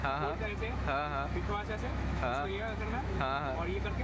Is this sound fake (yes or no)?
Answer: yes